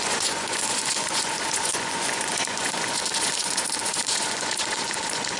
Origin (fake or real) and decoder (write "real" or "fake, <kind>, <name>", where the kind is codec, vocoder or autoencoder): fake, vocoder, Vocos